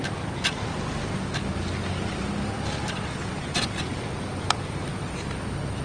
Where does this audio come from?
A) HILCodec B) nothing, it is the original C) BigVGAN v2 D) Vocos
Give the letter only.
B